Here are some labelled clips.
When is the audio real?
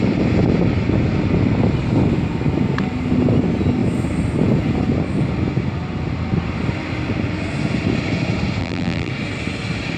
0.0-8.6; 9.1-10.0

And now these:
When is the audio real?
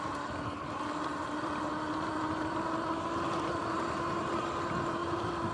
0.0-5.0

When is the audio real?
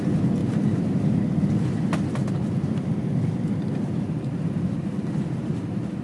0.0-0.4; 1.7-2.2; 4.9-6.0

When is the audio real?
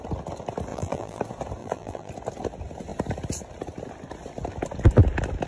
0.0-0.7; 1.2-1.6; 2.1-5.5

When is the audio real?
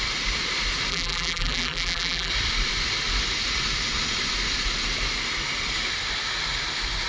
0.0-0.9; 2.3-7.1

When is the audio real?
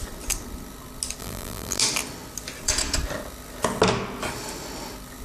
0.0-1.2; 1.8-5.2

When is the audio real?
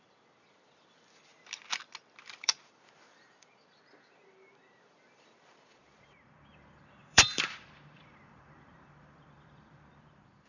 1.3-2.2